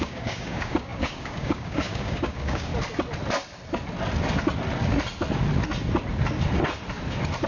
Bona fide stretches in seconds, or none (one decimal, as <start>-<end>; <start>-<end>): 2.7-7.5

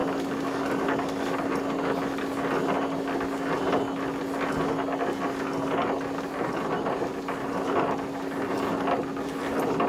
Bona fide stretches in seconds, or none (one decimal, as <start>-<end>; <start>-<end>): 0.0-9.9

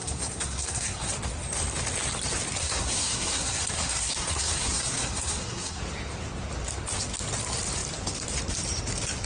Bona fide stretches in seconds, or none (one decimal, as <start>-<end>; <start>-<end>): 1.1-2.6; 5.8-9.3

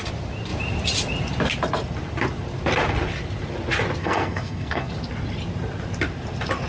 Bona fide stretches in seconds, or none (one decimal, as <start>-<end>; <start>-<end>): 0.0-4.0; 4.9-6.7

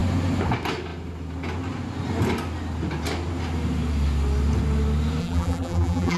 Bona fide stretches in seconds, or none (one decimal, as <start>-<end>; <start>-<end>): 0.0-5.2

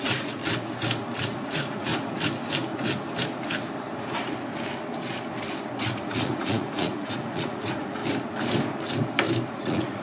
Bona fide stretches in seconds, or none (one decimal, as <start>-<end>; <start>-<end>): 0.4-1.2; 1.9-5.8; 8.0-9.5

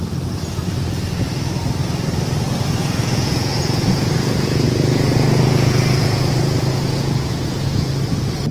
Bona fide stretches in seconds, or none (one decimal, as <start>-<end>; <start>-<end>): 0.0-2.8; 7.9-8.5